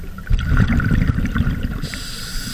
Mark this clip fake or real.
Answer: real